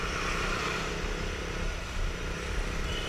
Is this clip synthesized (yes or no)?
no